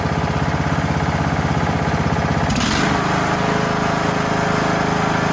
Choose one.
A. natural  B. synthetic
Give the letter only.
A